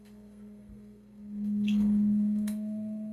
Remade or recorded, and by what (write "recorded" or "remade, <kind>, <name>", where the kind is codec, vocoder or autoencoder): remade, codec, SNAC